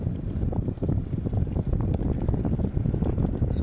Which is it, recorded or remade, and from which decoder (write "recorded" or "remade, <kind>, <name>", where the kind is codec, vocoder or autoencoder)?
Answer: recorded